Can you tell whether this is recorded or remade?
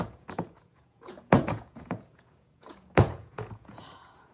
remade